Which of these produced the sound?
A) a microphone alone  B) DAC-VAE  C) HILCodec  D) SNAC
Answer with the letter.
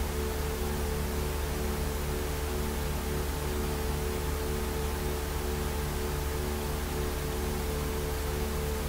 A